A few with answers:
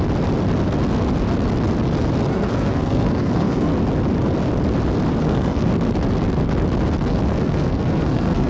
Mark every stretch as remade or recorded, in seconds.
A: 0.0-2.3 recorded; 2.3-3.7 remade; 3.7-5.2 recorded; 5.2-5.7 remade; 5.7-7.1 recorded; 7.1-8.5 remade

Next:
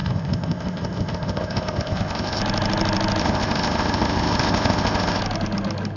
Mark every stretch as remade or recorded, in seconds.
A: 0.0-2.4 remade; 2.4-3.2 recorded; 3.2-5.2 remade; 5.2-6.0 recorded

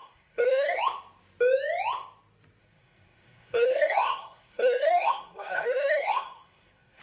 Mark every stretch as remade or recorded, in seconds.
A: 0.0-0.8 remade; 0.8-2.6 recorded; 2.6-7.0 remade

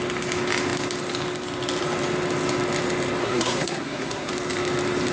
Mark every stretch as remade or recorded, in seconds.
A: 0.0-3.2 recorded; 3.2-4.3 remade; 4.3-5.1 recorded

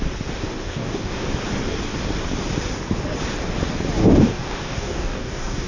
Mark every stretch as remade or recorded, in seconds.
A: 0.0-0.6 recorded; 0.6-1.3 remade; 1.3-4.0 recorded; 4.0-5.7 remade